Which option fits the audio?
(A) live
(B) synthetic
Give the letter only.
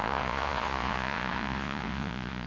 B